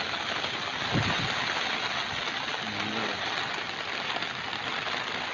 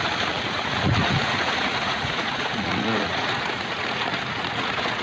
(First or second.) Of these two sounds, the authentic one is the first